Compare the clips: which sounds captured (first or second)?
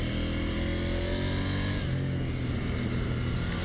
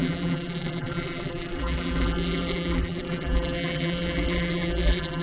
first